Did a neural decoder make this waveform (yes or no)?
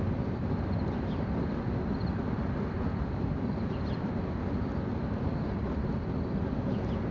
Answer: no